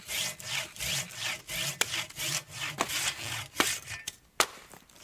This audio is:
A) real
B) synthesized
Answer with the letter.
A